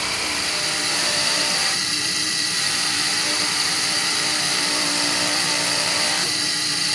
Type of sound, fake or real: fake